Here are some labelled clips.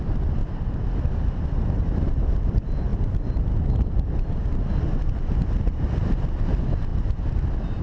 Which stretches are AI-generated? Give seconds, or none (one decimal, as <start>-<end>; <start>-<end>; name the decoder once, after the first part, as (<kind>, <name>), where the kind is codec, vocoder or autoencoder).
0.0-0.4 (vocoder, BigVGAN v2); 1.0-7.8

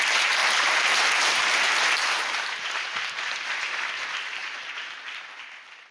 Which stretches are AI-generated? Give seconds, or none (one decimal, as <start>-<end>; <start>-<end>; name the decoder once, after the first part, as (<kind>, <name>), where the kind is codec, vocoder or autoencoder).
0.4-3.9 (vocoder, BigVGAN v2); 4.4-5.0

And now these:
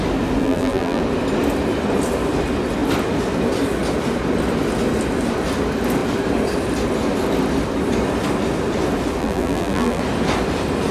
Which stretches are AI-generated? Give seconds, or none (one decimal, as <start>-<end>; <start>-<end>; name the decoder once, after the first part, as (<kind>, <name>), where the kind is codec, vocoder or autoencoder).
0.4-1.0 (vocoder, BigVGAN v2); 9.2-10.0

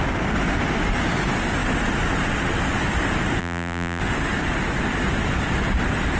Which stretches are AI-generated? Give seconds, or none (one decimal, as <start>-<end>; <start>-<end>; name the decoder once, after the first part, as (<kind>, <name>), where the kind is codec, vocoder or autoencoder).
3.4-4.0 (vocoder, BigVGAN v2)

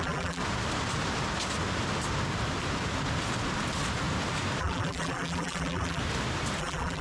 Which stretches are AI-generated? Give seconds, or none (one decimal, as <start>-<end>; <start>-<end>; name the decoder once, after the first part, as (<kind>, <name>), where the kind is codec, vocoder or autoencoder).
0.0-0.4 (vocoder, BigVGAN v2); 4.6-6.0; 6.6-7.0